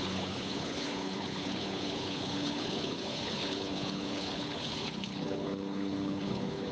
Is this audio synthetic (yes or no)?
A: yes